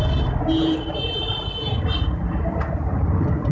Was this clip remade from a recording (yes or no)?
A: no